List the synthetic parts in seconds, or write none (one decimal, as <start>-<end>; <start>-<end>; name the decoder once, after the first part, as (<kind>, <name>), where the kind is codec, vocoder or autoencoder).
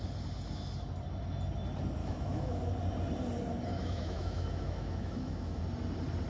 2.0-2.6 (autoencoder, DAC-VAE); 3.7-5.6